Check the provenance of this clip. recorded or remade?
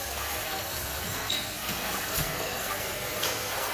remade